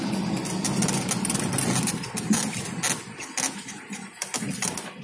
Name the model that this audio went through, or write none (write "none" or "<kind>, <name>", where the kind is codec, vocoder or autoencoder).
none